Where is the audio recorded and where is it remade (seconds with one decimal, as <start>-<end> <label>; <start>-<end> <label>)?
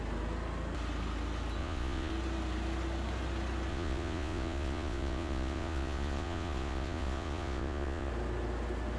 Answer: 0.0-1.6 recorded; 1.6-2.1 remade; 2.1-3.7 recorded; 3.7-8.1 remade; 8.1-9.0 recorded